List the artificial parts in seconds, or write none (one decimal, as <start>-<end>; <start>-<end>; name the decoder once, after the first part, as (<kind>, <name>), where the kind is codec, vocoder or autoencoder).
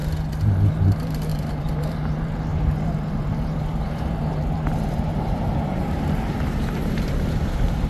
0.7-7.9 (vocoder, BigVGAN v2)